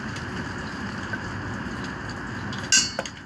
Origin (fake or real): real